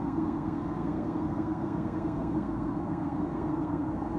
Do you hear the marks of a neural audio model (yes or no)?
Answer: yes